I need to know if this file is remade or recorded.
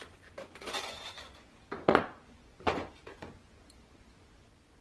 remade